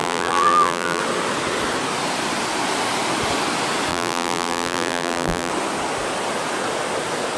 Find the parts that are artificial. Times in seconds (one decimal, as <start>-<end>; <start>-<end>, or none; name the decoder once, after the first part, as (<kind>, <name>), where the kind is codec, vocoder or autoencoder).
0.0-1.0 (vocoder, BigVGAN v2); 3.9-5.5